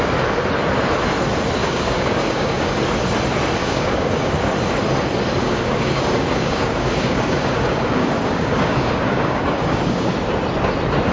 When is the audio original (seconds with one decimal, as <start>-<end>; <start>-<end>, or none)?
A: 0.0-1.6; 2.7-3.6; 4.3-5.4; 10.1-11.1